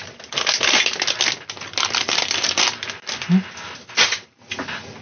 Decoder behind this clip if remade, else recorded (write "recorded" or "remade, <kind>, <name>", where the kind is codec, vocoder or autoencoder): recorded